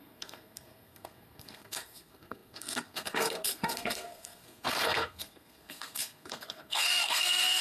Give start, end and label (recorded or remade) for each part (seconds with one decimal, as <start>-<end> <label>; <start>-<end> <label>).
0.0-7.6 remade